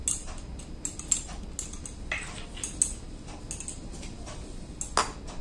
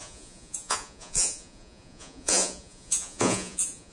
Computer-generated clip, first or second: second